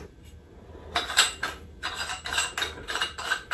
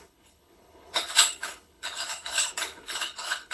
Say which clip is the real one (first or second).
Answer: first